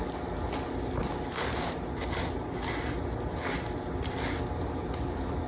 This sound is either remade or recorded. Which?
recorded